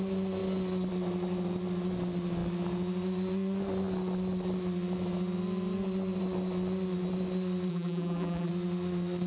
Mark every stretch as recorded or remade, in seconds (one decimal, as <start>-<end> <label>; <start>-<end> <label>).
0.0-7.7 recorded; 7.7-8.5 remade; 8.5-9.3 recorded